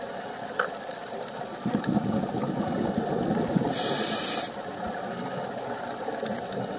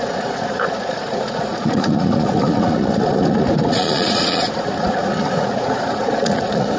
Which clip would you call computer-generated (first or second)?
second